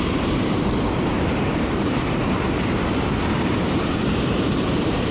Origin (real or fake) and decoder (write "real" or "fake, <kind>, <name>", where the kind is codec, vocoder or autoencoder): fake, vocoder, BigVGAN v2